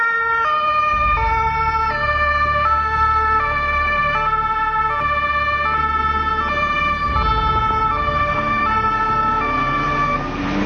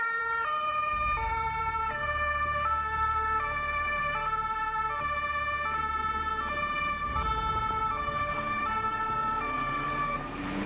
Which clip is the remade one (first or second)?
second